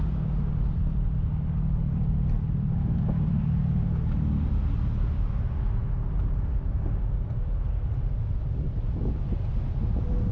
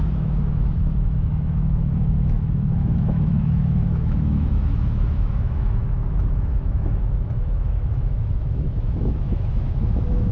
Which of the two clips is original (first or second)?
first